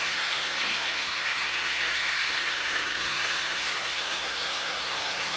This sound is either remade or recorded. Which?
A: remade